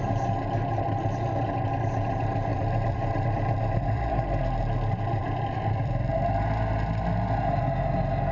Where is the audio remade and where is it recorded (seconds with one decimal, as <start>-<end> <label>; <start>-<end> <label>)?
0.0-2.5 recorded; 2.5-4.4 remade; 4.4-5.2 recorded; 5.2-6.1 remade; 6.1-8.3 recorded

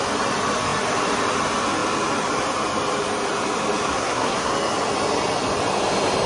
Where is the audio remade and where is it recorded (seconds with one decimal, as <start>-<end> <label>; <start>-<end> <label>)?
0.0-3.9 recorded; 3.9-4.5 remade; 4.5-6.3 recorded

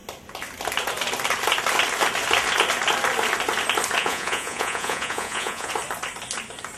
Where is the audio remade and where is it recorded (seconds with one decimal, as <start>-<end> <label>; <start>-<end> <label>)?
0.0-4.0 recorded; 4.0-5.7 remade; 5.7-6.8 recorded

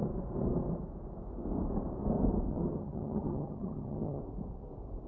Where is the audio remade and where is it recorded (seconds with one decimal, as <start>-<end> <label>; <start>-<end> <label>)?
0.0-2.5 recorded; 2.5-4.2 remade; 4.2-5.1 recorded

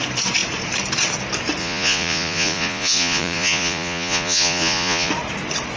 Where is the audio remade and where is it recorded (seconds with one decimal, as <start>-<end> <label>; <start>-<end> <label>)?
0.0-1.6 recorded; 1.6-5.1 remade; 5.1-5.8 recorded

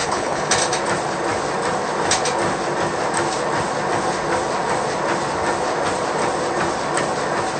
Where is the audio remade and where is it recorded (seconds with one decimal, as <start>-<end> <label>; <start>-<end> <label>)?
0.0-0.5 remade; 0.5-7.6 recorded

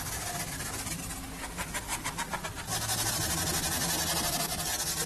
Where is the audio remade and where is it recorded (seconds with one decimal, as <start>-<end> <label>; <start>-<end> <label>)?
0.0-5.1 recorded

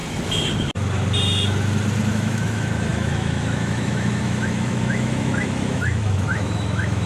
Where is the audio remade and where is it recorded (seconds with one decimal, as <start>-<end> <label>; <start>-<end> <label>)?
0.0-2.1 recorded; 2.1-7.1 remade